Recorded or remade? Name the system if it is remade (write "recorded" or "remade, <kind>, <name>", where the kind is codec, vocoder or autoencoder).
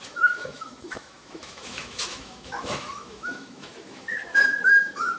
remade, autoencoder, DAC-VAE